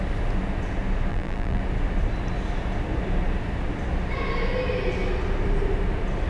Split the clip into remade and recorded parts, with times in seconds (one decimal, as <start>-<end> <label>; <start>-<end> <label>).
0.0-1.1 recorded; 1.1-1.6 remade; 1.6-6.3 recorded